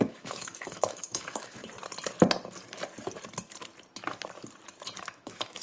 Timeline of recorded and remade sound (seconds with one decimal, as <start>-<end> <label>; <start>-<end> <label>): 0.0-1.6 remade; 1.6-5.0 recorded; 5.0-5.6 remade